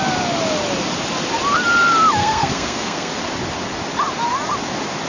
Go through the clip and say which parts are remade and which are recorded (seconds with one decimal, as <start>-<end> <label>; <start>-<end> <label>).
0.0-2.2 recorded; 2.2-3.1 remade; 3.1-5.1 recorded